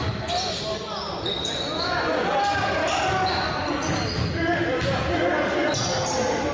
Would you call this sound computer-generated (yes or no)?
no